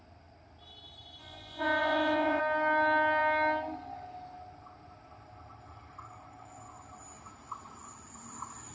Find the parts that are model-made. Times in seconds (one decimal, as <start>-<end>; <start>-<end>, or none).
1.2-2.4